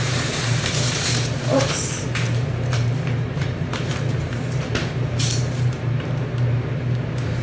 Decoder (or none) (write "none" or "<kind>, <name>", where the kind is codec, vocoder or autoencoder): vocoder, BigVGAN v2